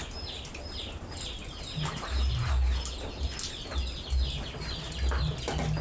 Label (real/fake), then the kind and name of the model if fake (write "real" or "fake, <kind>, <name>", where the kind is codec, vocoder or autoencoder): real